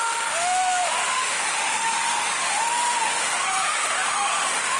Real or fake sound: fake